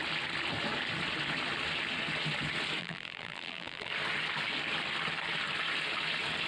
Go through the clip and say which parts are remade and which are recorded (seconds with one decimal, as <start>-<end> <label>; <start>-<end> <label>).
0.0-2.8 recorded; 2.8-3.9 remade; 3.9-6.5 recorded